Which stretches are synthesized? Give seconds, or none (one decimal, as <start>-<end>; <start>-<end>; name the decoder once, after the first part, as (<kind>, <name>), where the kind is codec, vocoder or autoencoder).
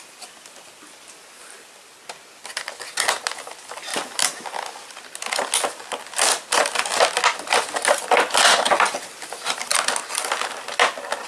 none